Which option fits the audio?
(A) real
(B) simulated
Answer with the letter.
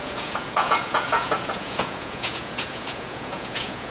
B